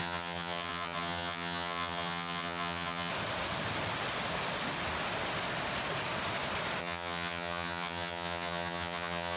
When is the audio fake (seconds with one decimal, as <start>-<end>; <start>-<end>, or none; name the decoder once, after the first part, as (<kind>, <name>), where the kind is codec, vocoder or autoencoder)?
0.0-3.1 (vocoder, HiFi-GAN); 6.8-9.4